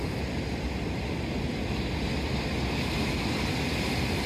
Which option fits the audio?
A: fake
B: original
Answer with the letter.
B